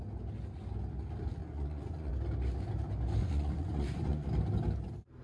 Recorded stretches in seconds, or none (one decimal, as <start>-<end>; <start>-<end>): 0.0-1.4; 2.1-3.2; 4.3-5.2